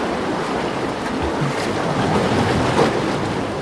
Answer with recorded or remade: recorded